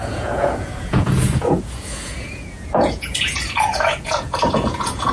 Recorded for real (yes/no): no